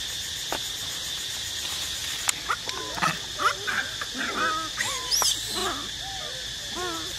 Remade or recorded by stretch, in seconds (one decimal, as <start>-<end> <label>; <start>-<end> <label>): 0.0-7.2 recorded